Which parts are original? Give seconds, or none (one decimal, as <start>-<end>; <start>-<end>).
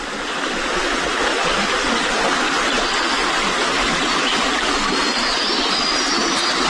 0.0-1.3; 2.1-3.6; 4.4-6.7